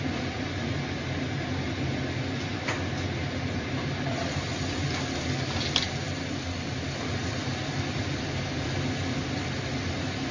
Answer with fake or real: real